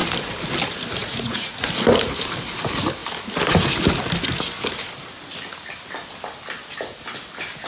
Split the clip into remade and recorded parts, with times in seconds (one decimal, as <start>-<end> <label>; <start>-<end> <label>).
0.0-1.0 recorded; 1.0-1.7 remade; 1.7-7.7 recorded